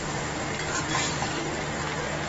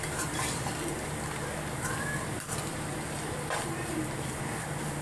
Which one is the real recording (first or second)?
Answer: first